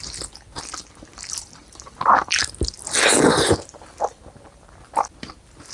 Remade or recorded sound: recorded